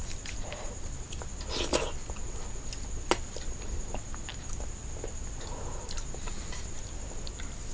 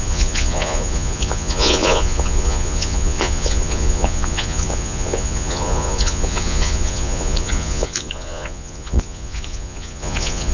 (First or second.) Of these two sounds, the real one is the first